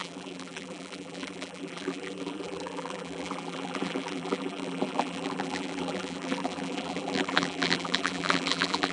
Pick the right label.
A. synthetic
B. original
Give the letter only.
A